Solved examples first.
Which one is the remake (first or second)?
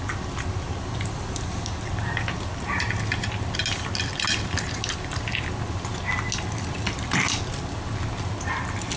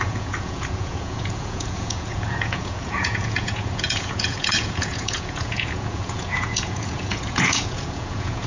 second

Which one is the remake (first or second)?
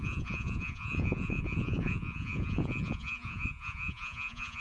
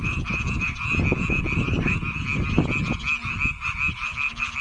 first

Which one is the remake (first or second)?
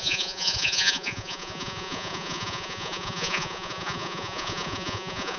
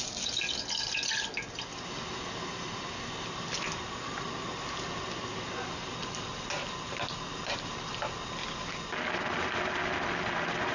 first